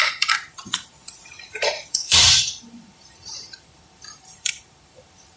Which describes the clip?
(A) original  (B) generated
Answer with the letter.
B